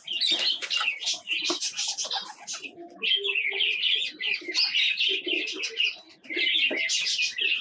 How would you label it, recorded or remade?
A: recorded